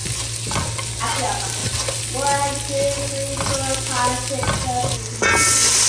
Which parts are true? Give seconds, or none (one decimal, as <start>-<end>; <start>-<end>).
0.7-5.9